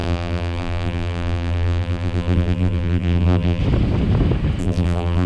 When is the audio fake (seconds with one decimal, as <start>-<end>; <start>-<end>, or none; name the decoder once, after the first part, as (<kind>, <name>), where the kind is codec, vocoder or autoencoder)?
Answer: 0.0-3.6 (vocoder, BigVGAN v2); 4.6-5.3